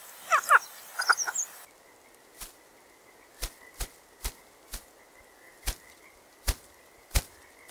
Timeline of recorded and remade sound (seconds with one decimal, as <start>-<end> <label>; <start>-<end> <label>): 0.0-7.7 recorded